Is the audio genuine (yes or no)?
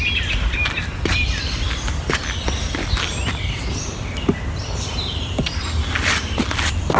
yes